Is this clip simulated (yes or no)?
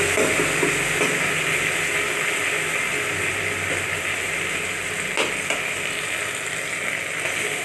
no